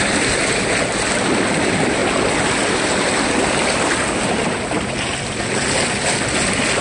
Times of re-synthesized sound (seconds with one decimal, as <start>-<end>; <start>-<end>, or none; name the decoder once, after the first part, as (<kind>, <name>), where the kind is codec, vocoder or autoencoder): none